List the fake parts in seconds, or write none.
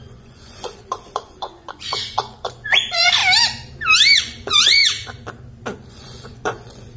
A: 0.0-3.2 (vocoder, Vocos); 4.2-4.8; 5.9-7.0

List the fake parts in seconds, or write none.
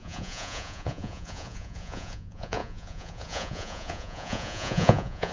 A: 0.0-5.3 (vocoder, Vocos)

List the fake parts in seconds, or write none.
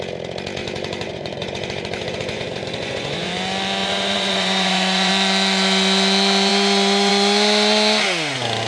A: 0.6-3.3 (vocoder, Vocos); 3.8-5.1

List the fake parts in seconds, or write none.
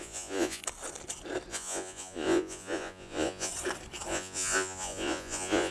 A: 0.0-0.6 (vocoder, Vocos); 1.5-3.5; 4.1-5.7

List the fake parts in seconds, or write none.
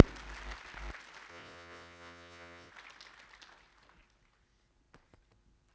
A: 1.3-2.7 (vocoder, Vocos)